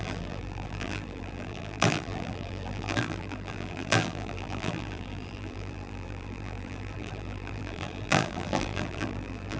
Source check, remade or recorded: remade